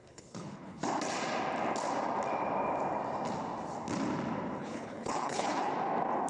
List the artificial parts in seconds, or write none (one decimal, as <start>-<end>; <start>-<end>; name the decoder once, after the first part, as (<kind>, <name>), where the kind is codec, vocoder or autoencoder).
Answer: 0.0-0.8 (codec, HILCodec); 4.6-5.7